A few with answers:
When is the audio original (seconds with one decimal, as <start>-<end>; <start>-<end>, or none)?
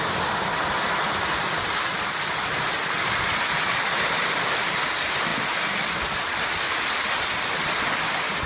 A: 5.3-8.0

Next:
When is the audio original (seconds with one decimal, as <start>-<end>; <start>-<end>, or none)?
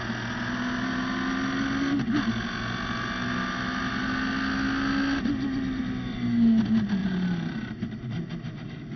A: 0.0-7.0; 8.3-9.0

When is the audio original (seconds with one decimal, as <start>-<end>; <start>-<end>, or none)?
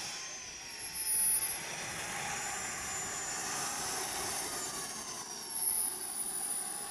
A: 0.0-3.4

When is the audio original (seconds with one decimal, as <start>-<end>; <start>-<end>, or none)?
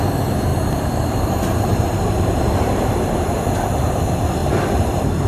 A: 0.0-0.5; 3.3-5.3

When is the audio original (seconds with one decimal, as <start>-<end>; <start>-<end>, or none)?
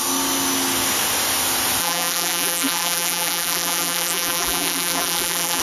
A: 0.0-1.8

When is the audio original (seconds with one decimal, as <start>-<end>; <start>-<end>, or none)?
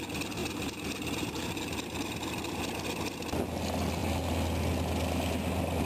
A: 0.0-0.4; 2.6-5.8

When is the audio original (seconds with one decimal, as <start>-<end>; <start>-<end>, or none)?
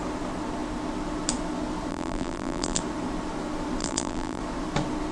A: 0.0-1.9; 2.8-3.8; 4.4-5.1